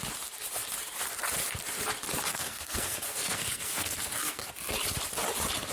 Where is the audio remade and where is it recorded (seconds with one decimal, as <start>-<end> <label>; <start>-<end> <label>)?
0.0-2.3 recorded; 2.3-4.5 remade; 4.5-5.7 recorded